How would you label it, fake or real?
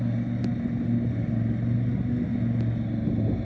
real